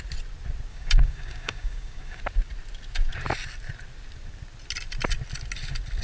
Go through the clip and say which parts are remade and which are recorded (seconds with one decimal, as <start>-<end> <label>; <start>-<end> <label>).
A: 0.0-0.7 recorded; 0.7-2.2 remade; 2.2-6.0 recorded